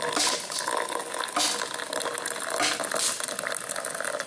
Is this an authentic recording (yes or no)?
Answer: yes